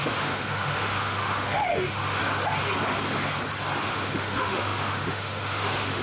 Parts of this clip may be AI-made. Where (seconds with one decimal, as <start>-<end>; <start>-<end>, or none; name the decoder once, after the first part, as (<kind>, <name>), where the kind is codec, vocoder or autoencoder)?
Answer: 0.0-2.2 (autoencoder, DAC-VAE); 3.8-6.0

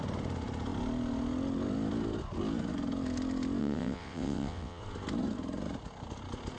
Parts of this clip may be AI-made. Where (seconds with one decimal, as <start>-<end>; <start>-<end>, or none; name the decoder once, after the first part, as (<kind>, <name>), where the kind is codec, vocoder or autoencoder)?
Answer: 3.6-4.8 (vocoder, WaveNeXt)

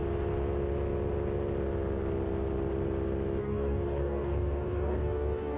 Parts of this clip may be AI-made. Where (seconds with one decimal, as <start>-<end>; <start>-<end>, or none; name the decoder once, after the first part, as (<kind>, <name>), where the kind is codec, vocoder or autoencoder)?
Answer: 3.4-5.6 (codec, DAC)